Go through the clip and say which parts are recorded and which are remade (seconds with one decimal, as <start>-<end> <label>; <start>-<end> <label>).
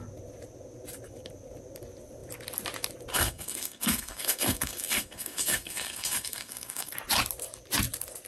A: 0.0-3.1 recorded; 3.1-6.9 remade; 6.9-8.3 recorded